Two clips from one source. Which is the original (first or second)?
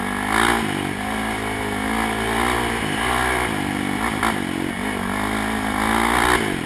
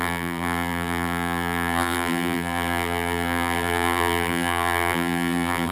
first